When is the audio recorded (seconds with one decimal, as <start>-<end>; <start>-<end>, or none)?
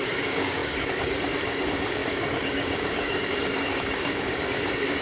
none